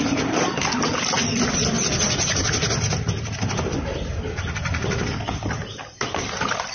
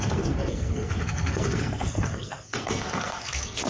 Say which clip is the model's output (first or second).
second